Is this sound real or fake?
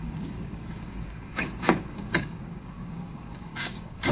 fake